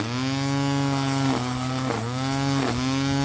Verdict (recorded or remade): recorded